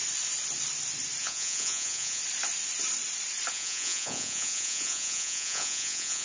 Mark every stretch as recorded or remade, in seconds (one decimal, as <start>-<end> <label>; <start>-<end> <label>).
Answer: 0.0-1.2 recorded; 1.2-2.2 remade; 2.2-3.5 recorded; 3.5-6.2 remade